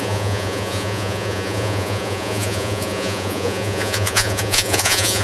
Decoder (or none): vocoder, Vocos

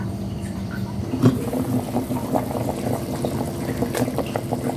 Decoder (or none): vocoder, BigVGAN v2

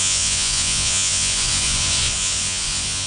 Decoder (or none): vocoder, Vocos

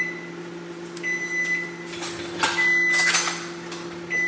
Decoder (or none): none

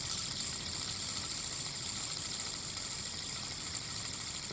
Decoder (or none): none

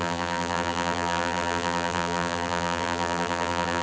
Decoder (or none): vocoder, BigVGAN v2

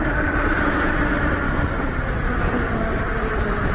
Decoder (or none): none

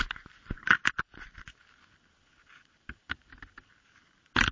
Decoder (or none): none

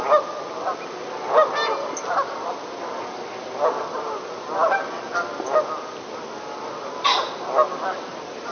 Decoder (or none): none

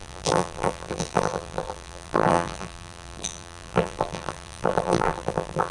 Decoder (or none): vocoder, BigVGAN v2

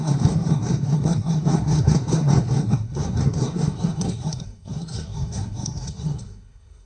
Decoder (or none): codec, SNAC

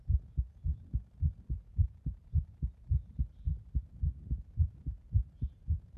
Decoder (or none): none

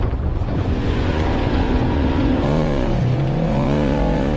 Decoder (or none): vocoder, Vocos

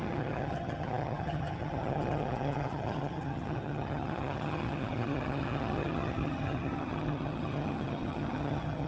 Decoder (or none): vocoder, HiFi-GAN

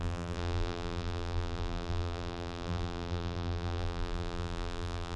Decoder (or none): vocoder, BigVGAN v2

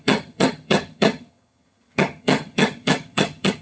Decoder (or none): vocoder, HiFi-GAN